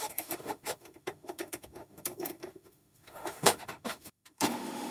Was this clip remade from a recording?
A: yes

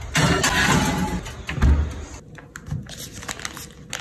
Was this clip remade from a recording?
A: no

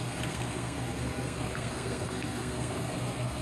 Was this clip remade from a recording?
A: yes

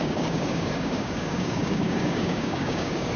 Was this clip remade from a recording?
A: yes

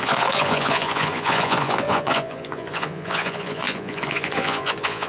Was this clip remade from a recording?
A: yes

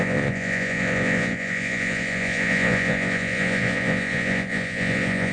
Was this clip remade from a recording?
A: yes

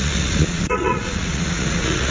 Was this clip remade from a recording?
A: yes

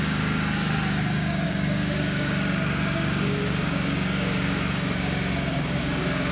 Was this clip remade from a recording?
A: yes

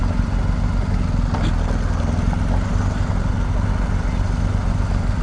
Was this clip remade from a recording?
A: no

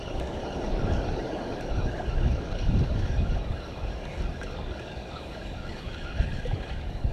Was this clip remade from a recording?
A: yes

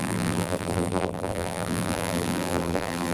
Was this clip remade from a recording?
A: yes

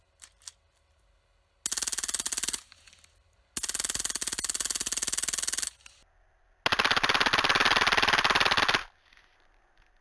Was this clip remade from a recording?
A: no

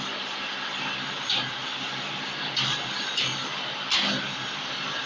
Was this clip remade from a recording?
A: no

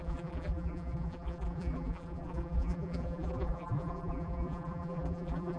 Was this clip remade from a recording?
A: yes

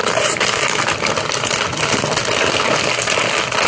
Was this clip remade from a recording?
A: no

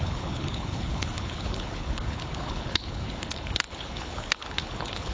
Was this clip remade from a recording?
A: yes